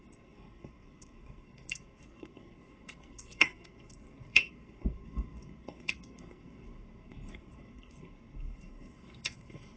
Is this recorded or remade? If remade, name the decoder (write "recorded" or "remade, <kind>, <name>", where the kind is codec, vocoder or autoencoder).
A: remade, codec, SNAC